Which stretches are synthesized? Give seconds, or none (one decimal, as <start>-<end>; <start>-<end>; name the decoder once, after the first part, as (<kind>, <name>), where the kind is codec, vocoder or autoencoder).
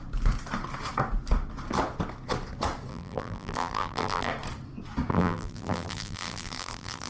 2.9-4.3 (vocoder, BigVGAN v2); 5.1-7.1